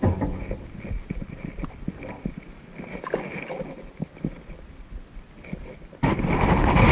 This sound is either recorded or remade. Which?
recorded